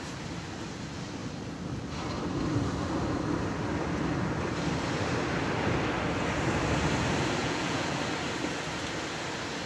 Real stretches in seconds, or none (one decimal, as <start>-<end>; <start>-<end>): 0.0-7.4; 8.0-9.7